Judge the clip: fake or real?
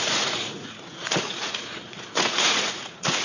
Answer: fake